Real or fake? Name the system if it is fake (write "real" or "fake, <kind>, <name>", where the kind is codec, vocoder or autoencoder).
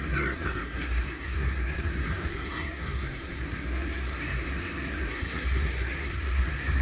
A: fake, codec, SNAC